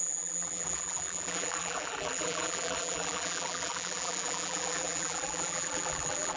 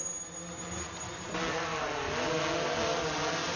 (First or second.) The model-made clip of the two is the first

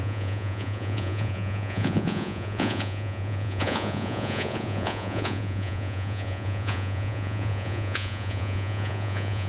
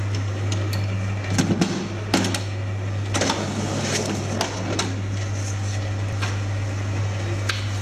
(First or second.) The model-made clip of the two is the first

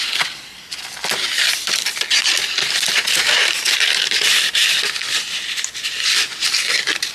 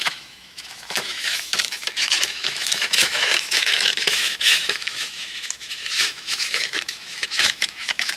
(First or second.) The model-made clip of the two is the second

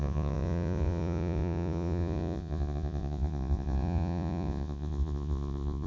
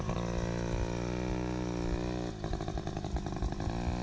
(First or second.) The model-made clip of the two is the first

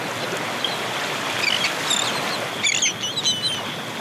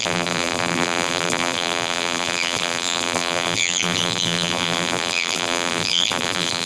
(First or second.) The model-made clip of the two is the second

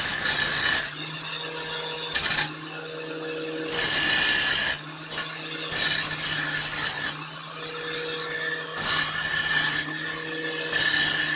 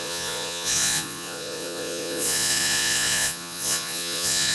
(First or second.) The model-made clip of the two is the second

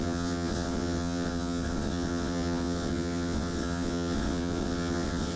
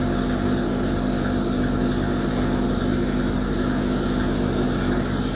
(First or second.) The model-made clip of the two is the first